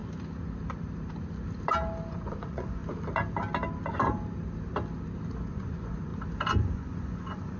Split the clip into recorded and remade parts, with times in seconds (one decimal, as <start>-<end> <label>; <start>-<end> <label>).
0.0-2.1 recorded; 2.1-2.8 remade; 2.8-5.5 recorded; 5.5-6.1 remade; 6.1-6.7 recorded; 6.7-7.6 remade